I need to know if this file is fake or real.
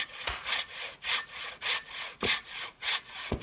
fake